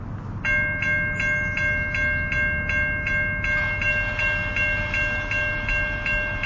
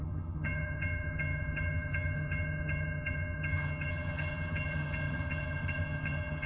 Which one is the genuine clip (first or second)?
first